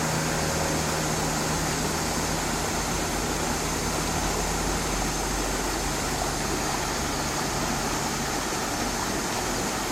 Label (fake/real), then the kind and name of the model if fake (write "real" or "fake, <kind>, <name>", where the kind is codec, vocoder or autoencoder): real